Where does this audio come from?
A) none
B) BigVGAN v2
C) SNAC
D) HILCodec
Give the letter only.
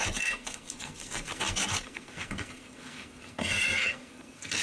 C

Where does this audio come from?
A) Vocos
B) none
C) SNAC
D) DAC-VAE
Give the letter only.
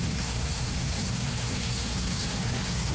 C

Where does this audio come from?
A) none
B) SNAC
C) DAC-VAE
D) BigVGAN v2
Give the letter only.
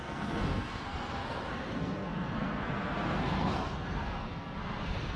B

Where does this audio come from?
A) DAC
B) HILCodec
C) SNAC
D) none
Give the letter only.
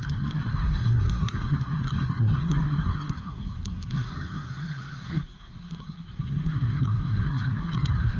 C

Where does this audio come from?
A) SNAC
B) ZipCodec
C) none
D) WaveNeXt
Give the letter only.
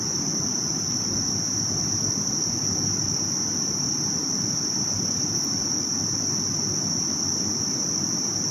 C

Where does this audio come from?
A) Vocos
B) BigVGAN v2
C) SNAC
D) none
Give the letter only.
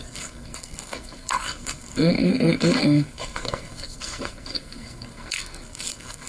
C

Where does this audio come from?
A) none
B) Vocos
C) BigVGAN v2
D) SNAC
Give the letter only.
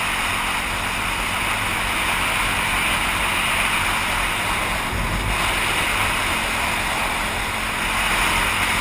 A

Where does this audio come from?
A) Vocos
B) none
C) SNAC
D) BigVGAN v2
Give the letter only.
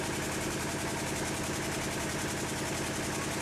B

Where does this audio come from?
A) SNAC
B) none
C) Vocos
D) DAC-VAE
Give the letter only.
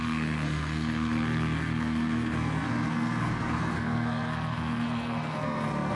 A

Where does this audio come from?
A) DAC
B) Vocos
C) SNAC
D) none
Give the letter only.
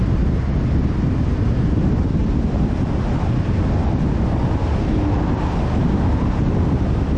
D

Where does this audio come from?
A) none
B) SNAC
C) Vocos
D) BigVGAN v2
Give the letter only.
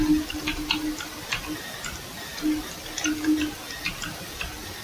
A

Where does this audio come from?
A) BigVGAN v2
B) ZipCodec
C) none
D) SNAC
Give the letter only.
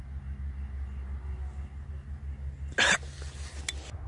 C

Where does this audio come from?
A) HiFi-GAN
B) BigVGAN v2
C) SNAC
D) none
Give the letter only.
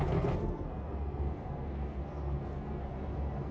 C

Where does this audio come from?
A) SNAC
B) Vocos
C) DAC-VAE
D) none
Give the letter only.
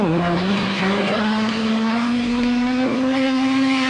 A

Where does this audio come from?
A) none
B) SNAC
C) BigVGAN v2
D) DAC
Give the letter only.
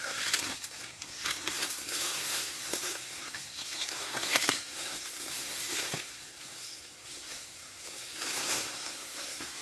B